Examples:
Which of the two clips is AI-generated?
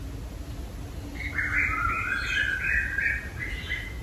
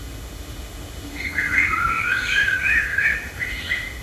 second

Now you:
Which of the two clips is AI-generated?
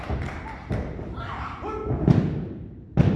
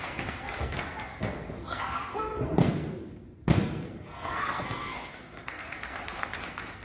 second